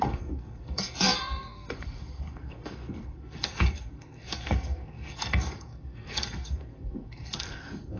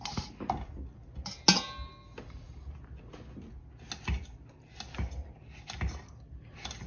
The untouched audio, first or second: second